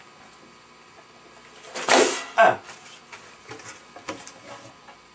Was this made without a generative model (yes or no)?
yes